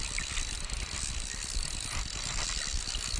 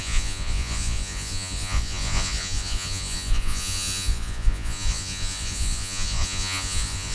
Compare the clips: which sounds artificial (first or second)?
second